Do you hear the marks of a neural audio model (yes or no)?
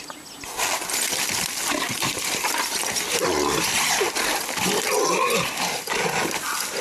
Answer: no